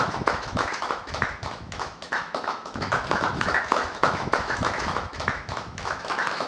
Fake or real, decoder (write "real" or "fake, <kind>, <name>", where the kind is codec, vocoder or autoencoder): fake, autoencoder, DAC-VAE